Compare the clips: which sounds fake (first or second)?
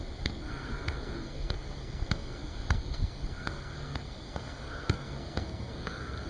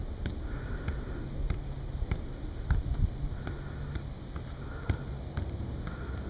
first